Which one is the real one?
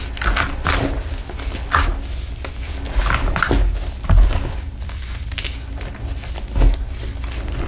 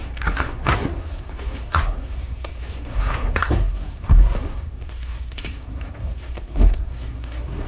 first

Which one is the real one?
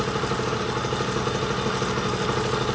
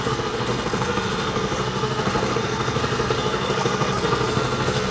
first